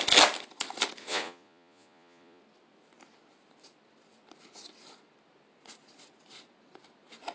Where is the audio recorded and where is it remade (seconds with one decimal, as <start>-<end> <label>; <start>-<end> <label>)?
0.0-1.0 recorded; 1.0-2.4 remade; 2.4-7.3 recorded